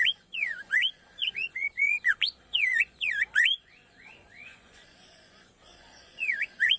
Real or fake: fake